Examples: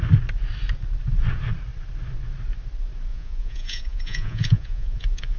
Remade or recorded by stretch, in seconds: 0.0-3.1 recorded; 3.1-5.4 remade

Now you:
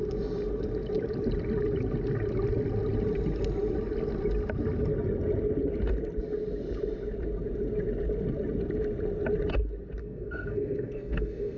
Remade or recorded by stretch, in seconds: 0.0-10.0 recorded; 10.0-11.6 remade

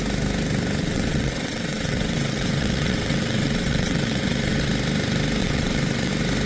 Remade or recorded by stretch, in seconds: 0.0-0.8 recorded; 0.8-4.7 remade; 4.7-5.4 recorded; 5.4-6.1 remade; 6.1-6.5 recorded

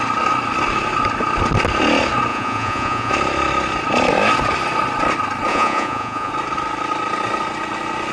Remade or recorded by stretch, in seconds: 0.0-2.3 recorded; 2.3-3.1 remade; 3.1-5.5 recorded; 5.5-6.3 remade; 6.3-8.1 recorded

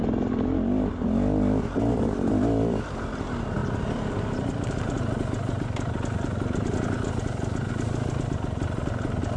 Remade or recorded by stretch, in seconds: 0.0-9.4 recorded

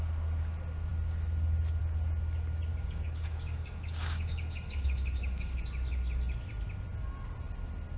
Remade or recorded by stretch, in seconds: 0.0-2.7 recorded; 2.7-5.6 remade; 5.6-8.0 recorded